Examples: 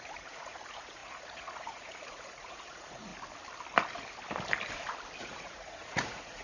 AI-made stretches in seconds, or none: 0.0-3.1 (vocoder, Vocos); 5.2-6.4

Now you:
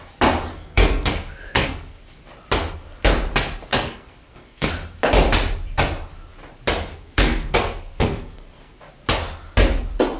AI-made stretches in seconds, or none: 0.5-2.0 (codec, SNAC); 3.7-4.7; 6.9-8.8

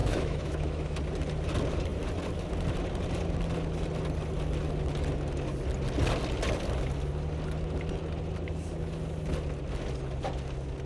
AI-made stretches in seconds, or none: 0.0-1.0 (autoencoder, DAC-VAE)